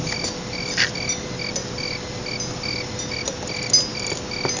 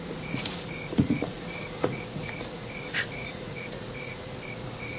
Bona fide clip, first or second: first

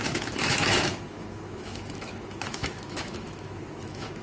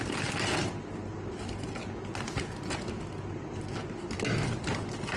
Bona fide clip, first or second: second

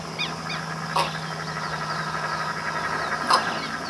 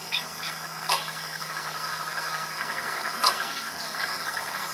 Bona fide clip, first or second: first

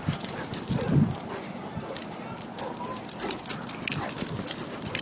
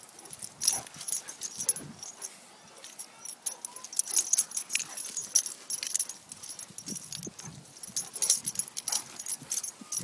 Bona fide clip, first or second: second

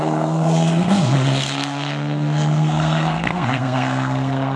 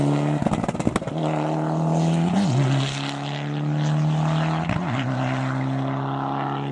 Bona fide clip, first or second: second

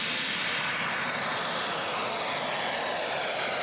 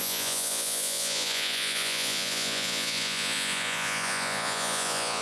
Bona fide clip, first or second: first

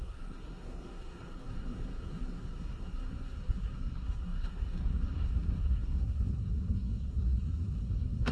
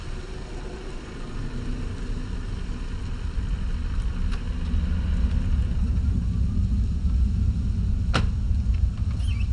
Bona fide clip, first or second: second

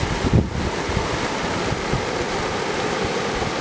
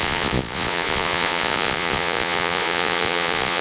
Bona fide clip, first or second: first